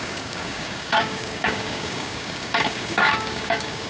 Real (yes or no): no